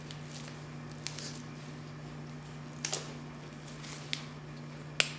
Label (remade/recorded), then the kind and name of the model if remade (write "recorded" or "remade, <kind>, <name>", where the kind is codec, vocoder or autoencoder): recorded